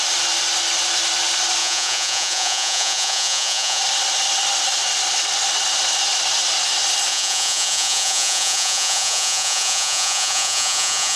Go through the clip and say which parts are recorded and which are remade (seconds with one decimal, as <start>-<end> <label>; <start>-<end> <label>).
0.0-1.6 recorded; 1.6-3.8 remade; 3.8-7.1 recorded; 7.1-11.2 remade